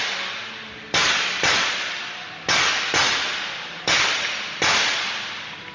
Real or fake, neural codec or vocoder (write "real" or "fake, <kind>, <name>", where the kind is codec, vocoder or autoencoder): real